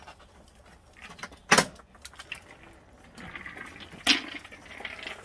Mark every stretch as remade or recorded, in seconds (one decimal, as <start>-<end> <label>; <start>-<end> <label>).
0.0-5.2 recorded